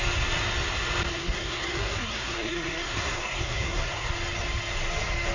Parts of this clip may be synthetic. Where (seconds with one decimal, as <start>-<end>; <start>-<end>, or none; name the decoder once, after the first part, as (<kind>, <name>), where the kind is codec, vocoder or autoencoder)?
1.1-4.1 (codec, SNAC)